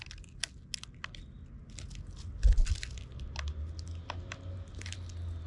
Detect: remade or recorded recorded